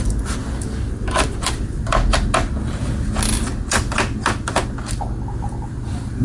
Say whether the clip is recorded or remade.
recorded